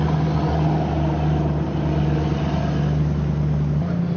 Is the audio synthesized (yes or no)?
no